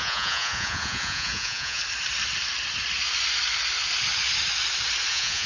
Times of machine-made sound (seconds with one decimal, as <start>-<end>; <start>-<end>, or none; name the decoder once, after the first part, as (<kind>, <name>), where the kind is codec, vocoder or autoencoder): 0.0-1.8 (vocoder, Vocos); 5.1-5.5